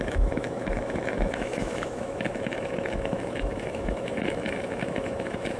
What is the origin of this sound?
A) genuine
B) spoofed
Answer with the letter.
B